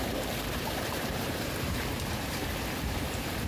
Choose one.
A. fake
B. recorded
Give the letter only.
A